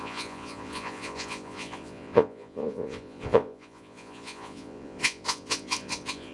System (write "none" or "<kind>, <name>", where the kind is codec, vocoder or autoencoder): vocoder, Vocos